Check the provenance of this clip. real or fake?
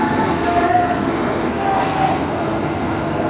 fake